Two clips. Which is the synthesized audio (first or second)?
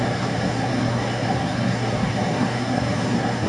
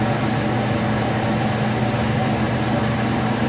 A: first